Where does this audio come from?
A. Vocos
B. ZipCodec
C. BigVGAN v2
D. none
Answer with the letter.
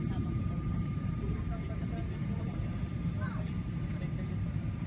C